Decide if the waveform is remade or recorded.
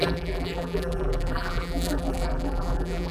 remade